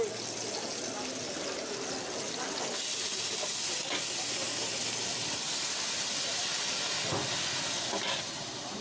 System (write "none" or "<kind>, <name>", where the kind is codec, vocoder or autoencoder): none